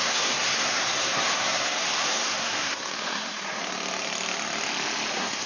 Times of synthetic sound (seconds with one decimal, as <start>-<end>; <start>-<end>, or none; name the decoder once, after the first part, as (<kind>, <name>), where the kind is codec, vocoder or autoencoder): 0.0-3.6 (codec, SNAC); 5.1-5.5

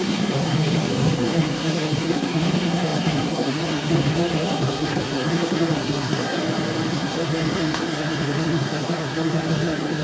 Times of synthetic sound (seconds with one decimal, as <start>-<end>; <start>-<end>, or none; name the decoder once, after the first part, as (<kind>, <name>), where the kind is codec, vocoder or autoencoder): 0.0-6.4 (codec, SNAC); 6.9-10.0

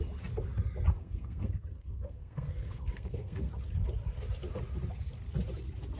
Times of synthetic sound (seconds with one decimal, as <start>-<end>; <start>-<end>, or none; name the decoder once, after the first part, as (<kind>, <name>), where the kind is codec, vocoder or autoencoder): 0.9-3.5 (codec, SNAC)

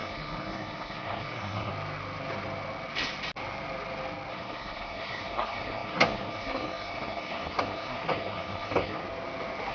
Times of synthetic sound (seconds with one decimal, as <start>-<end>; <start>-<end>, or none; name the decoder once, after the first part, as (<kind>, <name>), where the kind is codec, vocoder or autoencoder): 0.0-1.7 (codec, SNAC); 4.3-9.0

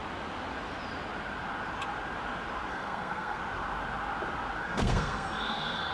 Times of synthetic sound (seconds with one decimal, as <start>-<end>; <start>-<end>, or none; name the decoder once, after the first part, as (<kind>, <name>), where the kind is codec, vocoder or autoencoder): 2.7-3.4 (codec, SNAC); 4.6-5.9

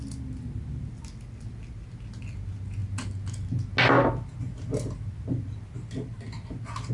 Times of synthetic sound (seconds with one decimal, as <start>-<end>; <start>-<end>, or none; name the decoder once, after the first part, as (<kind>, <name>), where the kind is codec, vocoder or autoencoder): none

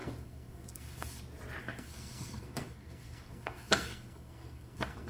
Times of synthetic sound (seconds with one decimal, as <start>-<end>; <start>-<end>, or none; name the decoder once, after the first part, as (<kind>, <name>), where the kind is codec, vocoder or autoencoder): 0.0-1.2 (codec, SNAC); 1.6-5.1

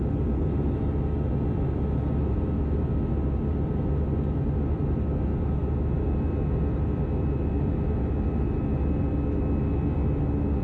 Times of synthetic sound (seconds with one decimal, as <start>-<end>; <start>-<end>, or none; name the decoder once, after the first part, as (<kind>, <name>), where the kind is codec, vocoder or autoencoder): none